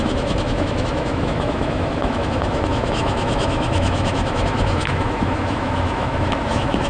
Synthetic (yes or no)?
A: yes